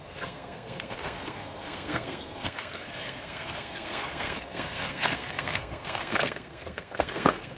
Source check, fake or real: fake